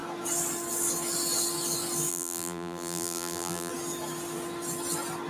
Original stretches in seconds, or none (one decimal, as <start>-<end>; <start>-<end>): 0.0-2.1; 3.7-5.3